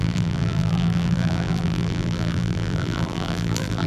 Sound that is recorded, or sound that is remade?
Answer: remade